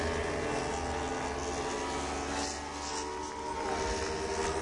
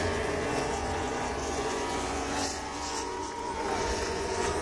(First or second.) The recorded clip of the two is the first